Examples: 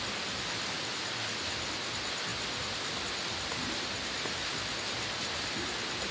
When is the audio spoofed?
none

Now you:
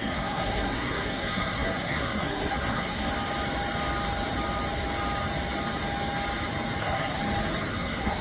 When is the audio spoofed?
0.0-3.1 (codec, SNAC); 6.8-7.2; 7.7-8.2

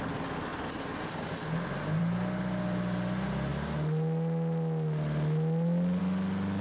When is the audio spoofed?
none

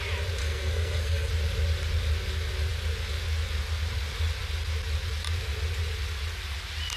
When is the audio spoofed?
0.4-1.3 (codec, SNAC)